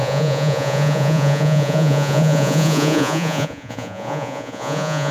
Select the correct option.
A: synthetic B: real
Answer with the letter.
A